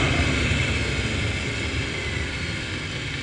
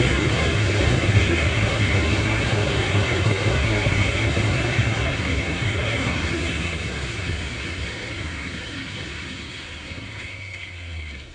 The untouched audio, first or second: first